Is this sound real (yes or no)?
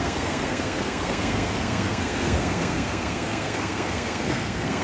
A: no